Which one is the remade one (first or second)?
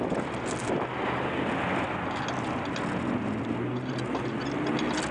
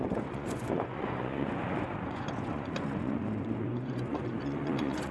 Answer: second